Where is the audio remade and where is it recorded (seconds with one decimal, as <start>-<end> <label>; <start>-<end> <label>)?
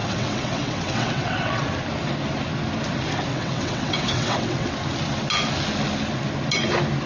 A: 0.0-1.6 remade; 1.6-3.3 recorded; 3.3-4.7 remade; 4.7-7.1 recorded